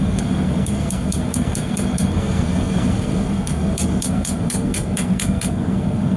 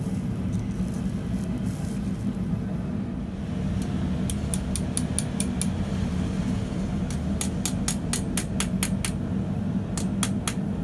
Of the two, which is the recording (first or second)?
second